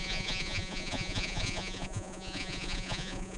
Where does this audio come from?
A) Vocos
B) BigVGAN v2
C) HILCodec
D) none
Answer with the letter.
A